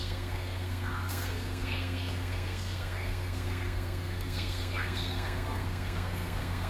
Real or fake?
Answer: fake